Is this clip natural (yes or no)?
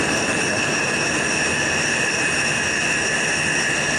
yes